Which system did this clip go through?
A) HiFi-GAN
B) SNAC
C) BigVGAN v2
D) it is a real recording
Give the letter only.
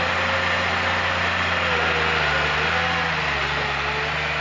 D